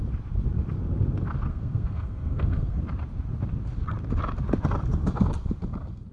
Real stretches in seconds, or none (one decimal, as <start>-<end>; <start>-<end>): 0.0-1.5; 2.8-6.1